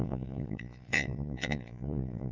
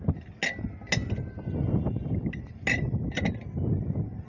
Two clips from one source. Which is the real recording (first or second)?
second